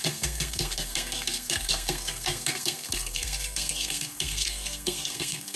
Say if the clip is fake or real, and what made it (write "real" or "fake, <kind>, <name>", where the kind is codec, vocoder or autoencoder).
fake, codec, SNAC